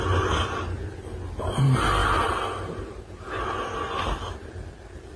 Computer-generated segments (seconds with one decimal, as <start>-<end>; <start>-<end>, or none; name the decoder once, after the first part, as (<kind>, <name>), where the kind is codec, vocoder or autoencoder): none